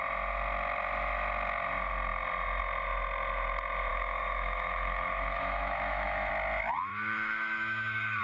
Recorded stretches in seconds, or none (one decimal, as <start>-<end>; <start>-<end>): 0.0-3.9; 6.3-6.9